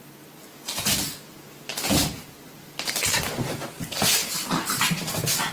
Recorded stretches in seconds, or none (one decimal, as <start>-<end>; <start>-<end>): 0.0-5.5